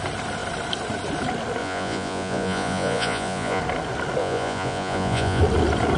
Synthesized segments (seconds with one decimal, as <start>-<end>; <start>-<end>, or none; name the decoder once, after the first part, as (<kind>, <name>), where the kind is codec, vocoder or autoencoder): 1.6-3.6 (vocoder, Vocos); 4.2-5.4

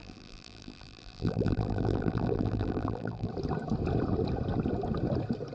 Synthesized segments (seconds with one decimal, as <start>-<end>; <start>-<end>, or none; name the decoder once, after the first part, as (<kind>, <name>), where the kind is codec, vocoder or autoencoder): 0.0-3.3 (vocoder, BigVGAN v2)

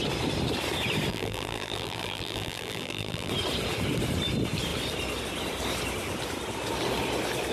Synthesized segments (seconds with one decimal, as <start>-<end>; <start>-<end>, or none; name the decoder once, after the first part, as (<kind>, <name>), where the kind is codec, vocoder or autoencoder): 1.1-3.3 (vocoder, BigVGAN v2)

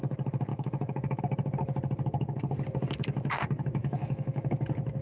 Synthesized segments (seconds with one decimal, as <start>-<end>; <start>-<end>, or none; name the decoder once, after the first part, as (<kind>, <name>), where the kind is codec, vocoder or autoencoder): 0.5-1.2 (autoencoder, DAC-VAE); 3.8-4.5